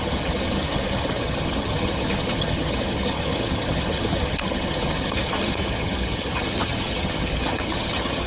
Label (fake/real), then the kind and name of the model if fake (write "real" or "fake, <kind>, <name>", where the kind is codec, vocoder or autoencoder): fake, vocoder, HiFi-GAN